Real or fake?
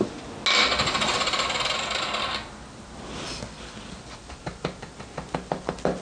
real